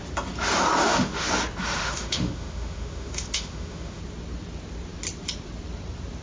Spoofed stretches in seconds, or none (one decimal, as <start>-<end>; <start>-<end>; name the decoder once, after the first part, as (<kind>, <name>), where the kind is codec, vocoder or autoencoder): 0.8-1.3 (autoencoder, DAC-VAE); 1.8-4.0